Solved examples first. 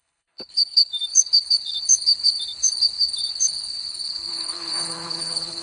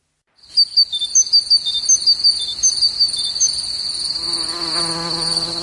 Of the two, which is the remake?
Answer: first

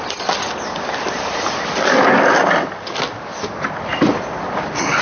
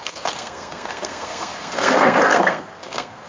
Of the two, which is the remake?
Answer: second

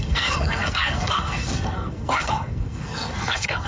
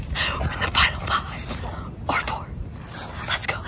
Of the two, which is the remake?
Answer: first